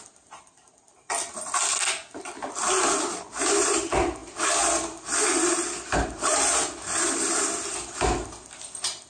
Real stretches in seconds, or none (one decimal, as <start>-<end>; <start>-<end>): 0.0-9.1